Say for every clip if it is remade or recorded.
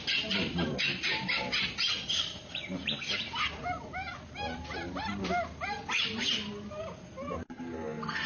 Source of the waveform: recorded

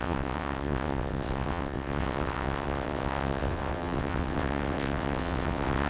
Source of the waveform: remade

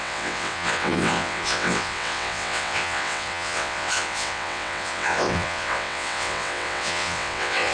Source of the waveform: remade